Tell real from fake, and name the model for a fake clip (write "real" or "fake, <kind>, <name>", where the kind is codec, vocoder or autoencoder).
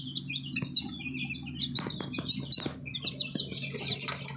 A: real